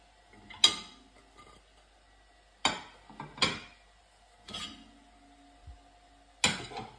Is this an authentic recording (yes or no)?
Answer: yes